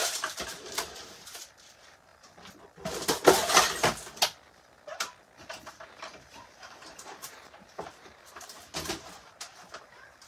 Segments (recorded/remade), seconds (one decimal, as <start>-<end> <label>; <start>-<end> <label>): 0.0-2.1 remade; 2.1-5.7 recorded; 5.7-10.3 remade